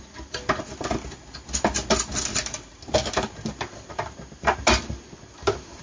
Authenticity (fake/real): real